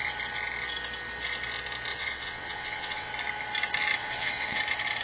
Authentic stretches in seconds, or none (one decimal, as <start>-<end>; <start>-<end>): 0.0-1.9; 3.1-4.0; 4.6-5.0